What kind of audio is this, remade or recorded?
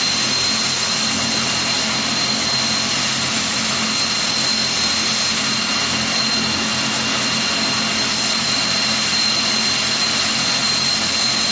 recorded